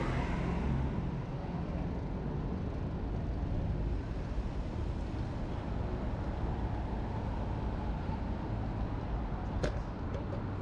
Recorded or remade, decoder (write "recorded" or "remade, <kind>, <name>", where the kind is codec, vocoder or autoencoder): recorded